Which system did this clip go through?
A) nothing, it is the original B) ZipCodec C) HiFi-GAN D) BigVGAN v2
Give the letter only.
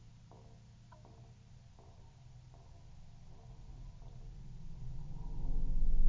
A